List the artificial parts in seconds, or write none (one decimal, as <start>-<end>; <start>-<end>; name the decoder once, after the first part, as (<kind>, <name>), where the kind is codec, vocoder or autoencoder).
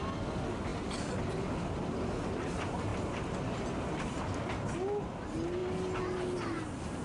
none